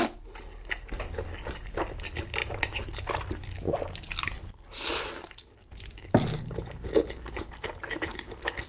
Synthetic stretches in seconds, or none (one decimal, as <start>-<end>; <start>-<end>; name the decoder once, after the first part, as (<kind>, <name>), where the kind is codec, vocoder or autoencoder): none